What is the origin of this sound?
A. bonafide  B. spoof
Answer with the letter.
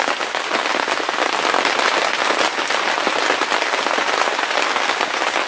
A